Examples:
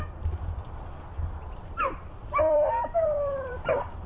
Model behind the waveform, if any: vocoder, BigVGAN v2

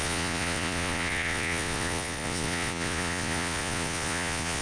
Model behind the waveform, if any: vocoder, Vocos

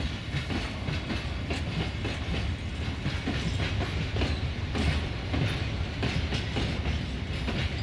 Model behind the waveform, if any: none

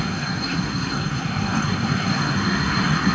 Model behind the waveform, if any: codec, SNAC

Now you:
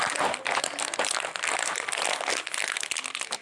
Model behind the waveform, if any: none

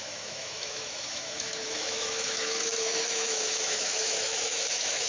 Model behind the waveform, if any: autoencoder, DAC-VAE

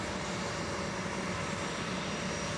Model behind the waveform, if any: none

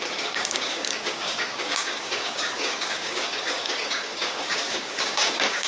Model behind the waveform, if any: codec, DAC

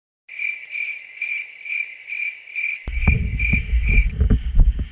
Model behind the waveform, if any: none